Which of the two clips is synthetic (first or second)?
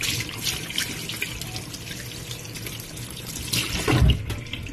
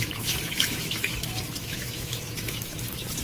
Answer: second